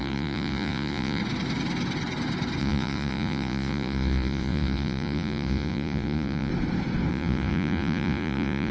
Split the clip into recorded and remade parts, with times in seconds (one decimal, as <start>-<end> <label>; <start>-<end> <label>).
0.0-1.2 remade; 1.2-2.6 recorded; 2.6-6.5 remade; 6.5-7.1 recorded; 7.1-8.7 remade